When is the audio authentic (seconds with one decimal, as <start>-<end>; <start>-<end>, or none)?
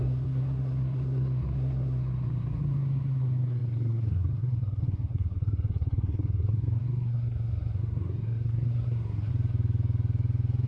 9.3-10.7